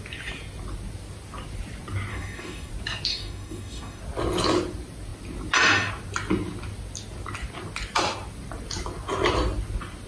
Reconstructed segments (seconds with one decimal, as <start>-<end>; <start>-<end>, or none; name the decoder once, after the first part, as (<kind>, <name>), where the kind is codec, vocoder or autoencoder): 2.1-2.7 (codec, DAC); 3.1-4.0